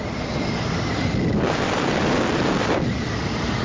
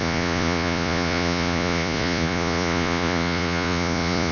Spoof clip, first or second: second